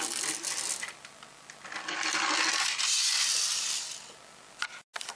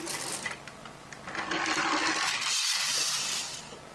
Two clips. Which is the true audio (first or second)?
first